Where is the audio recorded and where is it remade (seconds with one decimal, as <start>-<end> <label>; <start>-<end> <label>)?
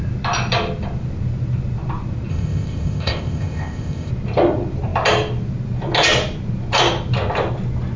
0.0-2.3 recorded; 2.3-4.1 remade; 4.1-8.0 recorded